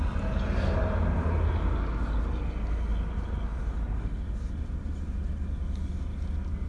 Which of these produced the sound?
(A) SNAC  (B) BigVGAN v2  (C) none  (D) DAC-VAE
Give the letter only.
C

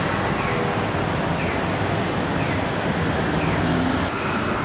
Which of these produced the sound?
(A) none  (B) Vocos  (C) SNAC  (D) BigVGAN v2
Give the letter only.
A